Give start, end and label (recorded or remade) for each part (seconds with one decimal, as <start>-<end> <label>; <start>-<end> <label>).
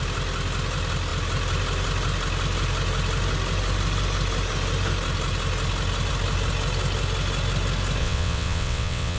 0.0-8.0 recorded; 8.0-9.2 remade